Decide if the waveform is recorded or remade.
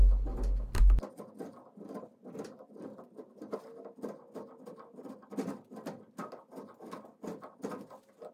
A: recorded